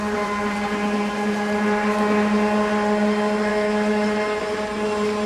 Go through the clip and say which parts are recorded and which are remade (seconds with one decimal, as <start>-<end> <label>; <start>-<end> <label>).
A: 0.0-3.5 recorded; 3.5-4.4 remade; 4.4-5.3 recorded